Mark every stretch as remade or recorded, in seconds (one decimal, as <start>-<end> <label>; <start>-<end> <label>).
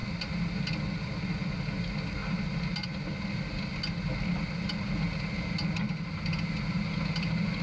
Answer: 0.0-7.6 recorded